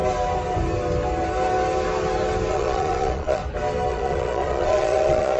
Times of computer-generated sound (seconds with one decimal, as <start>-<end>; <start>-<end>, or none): 2.5-3.4; 3.9-5.4